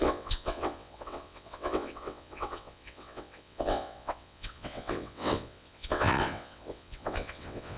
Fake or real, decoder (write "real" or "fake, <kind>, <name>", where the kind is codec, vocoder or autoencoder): fake, vocoder, WaveNeXt